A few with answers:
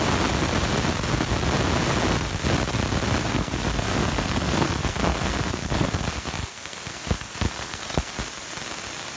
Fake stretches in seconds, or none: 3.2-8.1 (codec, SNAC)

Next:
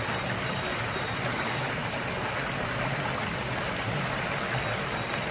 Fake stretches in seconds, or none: none

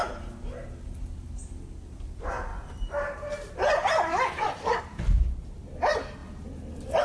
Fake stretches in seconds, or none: 2.5-5.5 (vocoder, BigVGAN v2)

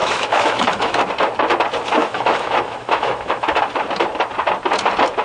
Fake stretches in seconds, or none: 0.0-1.0 (autoencoder, DAC-VAE); 2.0-3.6

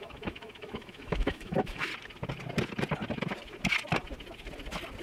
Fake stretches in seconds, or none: 0.0-1.9 (autoencoder, DAC-VAE)

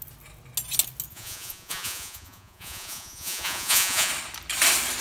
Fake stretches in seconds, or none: 1.1-4.1 (vocoder, Vocos)

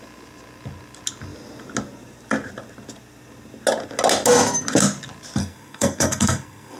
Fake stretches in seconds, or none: 5.4-6.8 (codec, SNAC)

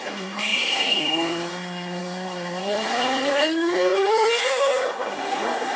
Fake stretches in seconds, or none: 0.0-5.8 (codec, SNAC)